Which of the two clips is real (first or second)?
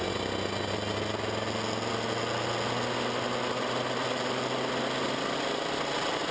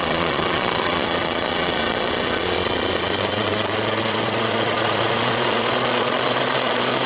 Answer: first